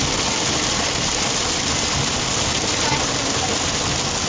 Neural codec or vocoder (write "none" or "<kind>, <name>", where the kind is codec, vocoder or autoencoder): none